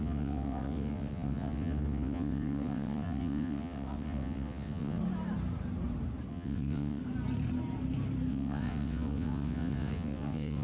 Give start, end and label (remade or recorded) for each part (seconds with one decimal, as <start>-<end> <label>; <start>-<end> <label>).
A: 0.0-5.0 remade; 5.0-6.3 recorded; 6.3-7.0 remade; 7.0-8.3 recorded; 8.3-10.6 remade